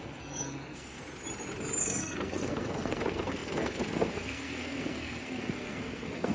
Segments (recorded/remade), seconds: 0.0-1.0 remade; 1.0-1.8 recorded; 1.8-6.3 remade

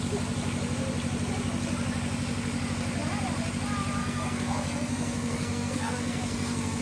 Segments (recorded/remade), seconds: 0.0-4.0 recorded; 4.0-6.8 remade

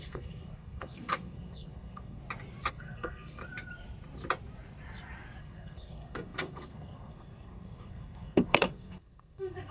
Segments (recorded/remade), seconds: 0.0-2.2 remade; 2.2-2.7 recorded; 2.7-3.4 remade; 3.4-5.4 recorded; 5.4-9.7 remade

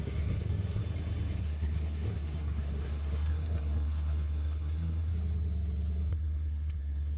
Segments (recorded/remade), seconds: 0.0-0.8 remade; 0.8-1.4 recorded; 1.4-5.1 remade; 5.1-6.1 recorded; 6.1-7.2 remade